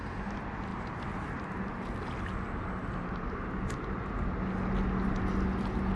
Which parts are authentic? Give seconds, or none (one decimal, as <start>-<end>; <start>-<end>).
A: 0.0-6.0